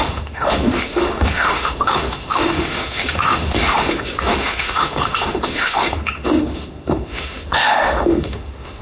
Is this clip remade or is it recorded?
remade